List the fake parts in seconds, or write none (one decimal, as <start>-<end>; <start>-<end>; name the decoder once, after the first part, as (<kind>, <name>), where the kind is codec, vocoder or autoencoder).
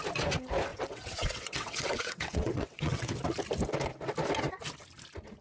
0.7-3.1 (vocoder, WaveNeXt)